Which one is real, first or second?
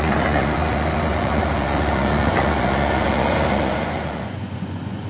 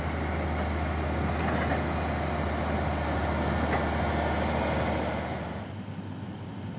second